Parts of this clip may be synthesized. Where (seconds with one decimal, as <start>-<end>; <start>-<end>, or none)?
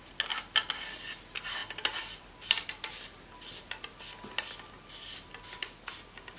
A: none